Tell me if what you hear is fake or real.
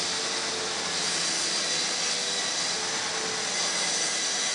real